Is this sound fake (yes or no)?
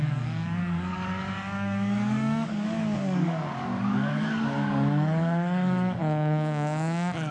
yes